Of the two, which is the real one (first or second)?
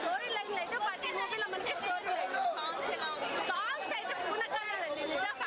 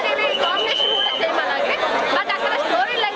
first